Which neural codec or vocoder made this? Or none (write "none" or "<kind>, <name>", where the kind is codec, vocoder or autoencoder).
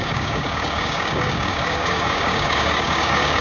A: codec, DAC